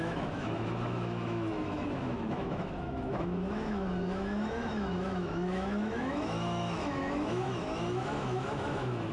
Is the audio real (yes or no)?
no